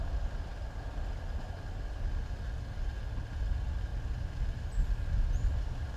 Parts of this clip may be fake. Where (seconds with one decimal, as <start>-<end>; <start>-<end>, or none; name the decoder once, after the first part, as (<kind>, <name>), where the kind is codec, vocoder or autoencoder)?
none